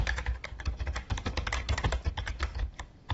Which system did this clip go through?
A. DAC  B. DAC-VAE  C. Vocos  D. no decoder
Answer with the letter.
A